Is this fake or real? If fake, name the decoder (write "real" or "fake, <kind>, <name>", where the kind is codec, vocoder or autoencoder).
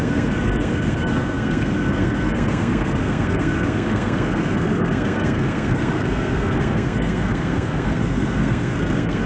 fake, codec, SNAC